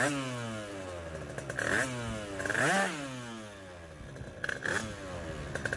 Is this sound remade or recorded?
recorded